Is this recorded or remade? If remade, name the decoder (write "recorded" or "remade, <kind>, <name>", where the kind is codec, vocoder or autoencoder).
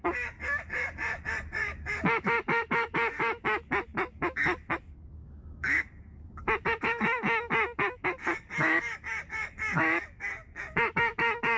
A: remade, codec, DAC